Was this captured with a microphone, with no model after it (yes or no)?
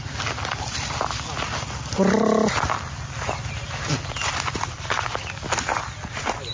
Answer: yes